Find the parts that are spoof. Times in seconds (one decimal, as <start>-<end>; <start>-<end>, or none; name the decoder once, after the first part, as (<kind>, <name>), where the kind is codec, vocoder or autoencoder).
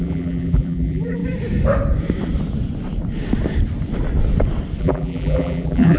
0.0-1.2 (vocoder, BigVGAN v2); 4.8-6.0